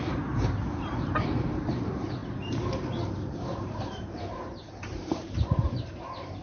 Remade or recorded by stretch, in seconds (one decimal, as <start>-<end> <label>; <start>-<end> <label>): 0.0-6.4 remade